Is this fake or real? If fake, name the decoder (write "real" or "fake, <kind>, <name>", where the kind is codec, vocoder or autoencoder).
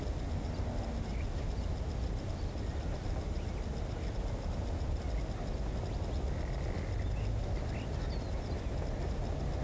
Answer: real